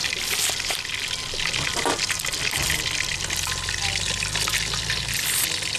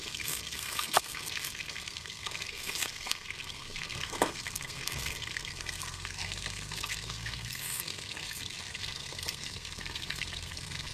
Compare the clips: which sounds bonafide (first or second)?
first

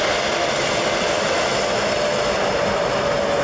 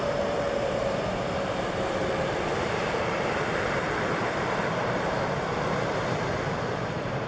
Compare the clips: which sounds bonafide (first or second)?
first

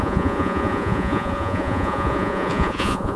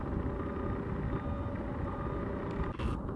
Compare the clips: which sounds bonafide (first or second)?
second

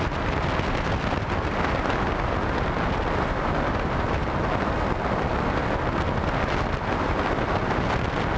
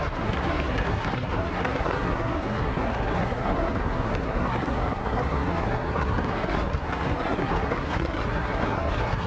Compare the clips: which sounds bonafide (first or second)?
first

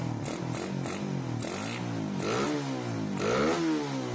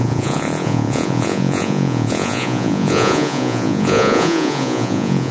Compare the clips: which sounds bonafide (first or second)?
first